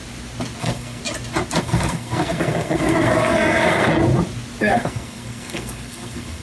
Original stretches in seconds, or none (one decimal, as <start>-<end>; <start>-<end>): 0.0-0.6; 1.0-1.6; 3.9-4.6